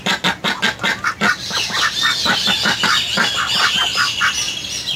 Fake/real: real